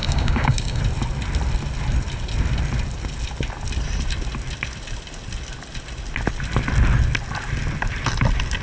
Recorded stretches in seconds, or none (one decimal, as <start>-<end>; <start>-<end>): 0.8-8.6